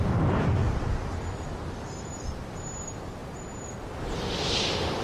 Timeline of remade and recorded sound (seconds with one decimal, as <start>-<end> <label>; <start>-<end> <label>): 0.0-3.2 remade; 3.2-4.0 recorded; 4.0-5.0 remade